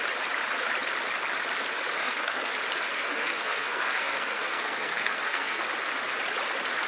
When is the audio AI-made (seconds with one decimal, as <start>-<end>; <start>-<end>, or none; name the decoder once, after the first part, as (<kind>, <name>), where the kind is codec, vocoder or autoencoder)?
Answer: 2.0-2.5 (codec, SNAC); 2.9-5.6